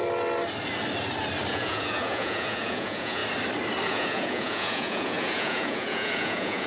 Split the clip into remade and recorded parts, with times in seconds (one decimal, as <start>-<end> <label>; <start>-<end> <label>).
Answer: 0.0-1.5 recorded; 1.5-3.2 remade; 3.2-3.9 recorded; 3.9-6.7 remade